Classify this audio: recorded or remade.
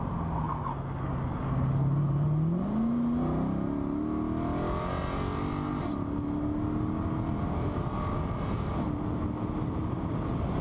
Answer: recorded